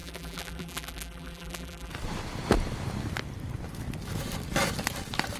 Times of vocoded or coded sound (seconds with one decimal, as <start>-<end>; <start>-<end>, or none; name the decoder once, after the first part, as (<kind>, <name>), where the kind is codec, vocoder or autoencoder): 0.0-1.9 (vocoder, BigVGAN v2)